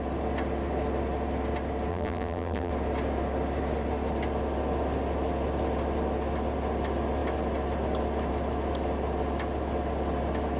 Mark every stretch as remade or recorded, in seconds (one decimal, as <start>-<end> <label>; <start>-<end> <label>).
0.0-1.9 recorded; 1.9-2.7 remade; 2.7-10.6 recorded